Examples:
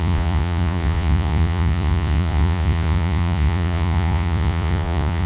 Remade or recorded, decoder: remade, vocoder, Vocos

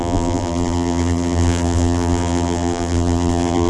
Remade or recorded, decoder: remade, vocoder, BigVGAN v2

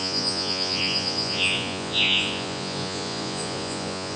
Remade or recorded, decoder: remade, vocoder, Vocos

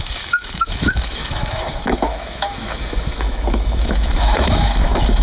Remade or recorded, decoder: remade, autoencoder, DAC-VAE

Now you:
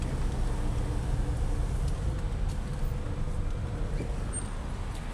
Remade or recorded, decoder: recorded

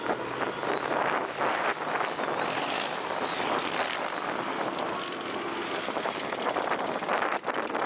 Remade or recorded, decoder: recorded